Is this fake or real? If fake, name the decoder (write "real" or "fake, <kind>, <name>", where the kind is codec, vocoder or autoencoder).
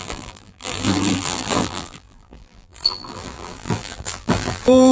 fake, vocoder, BigVGAN v2